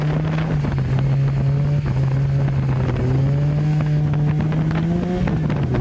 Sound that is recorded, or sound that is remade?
recorded